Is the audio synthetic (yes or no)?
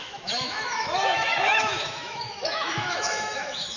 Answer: yes